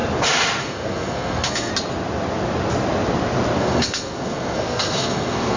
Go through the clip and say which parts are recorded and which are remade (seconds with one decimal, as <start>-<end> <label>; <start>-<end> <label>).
0.0-0.6 recorded; 0.6-1.7 remade; 1.7-3.6 recorded; 3.6-5.6 remade